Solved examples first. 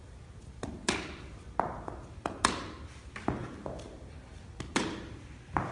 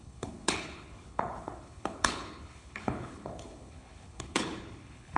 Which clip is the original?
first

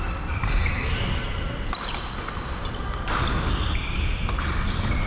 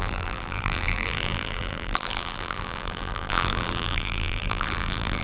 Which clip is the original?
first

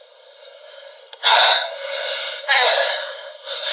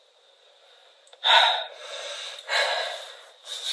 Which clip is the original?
second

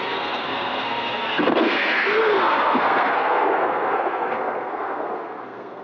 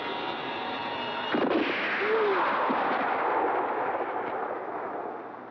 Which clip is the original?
second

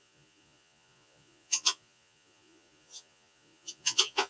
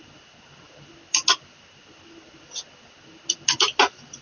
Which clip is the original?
second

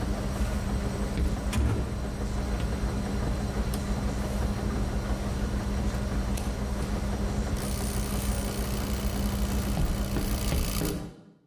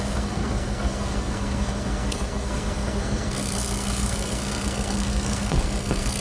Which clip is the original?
first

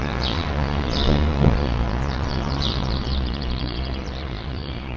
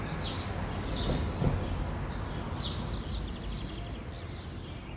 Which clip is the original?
second